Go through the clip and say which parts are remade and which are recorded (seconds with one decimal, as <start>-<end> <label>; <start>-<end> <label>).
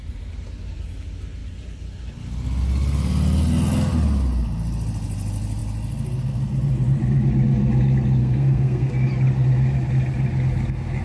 0.0-8.2 recorded; 8.2-8.9 remade; 8.9-11.0 recorded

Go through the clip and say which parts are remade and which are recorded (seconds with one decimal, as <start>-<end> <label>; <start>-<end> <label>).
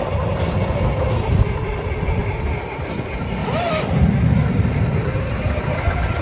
0.0-1.3 recorded; 1.3-2.2 remade; 2.2-3.4 recorded; 3.4-5.2 remade; 5.2-6.2 recorded